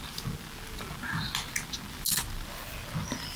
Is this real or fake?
real